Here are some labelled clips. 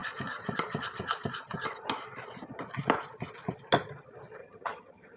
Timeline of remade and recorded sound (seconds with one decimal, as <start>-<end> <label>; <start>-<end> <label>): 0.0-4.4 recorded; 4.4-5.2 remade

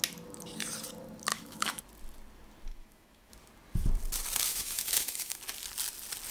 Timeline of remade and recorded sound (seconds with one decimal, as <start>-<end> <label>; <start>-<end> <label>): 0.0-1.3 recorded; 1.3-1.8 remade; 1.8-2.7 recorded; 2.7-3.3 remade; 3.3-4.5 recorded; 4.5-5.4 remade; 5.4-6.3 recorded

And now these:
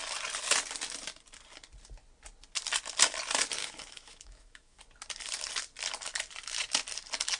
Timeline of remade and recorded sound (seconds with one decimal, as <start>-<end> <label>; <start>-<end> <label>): 0.0-3.6 recorded; 3.6-4.8 remade; 4.8-7.4 recorded